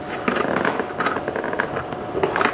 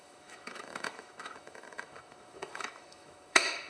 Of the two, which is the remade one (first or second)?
second